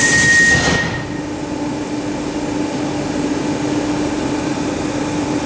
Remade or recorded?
recorded